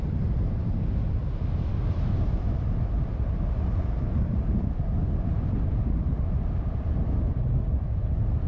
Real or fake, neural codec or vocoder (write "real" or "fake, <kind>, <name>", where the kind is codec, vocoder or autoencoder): real